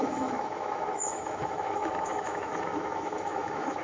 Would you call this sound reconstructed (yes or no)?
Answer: yes